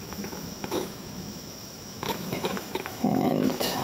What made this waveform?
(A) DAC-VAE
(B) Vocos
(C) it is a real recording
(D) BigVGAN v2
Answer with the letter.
A